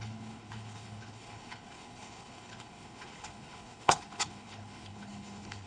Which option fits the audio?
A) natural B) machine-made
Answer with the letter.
B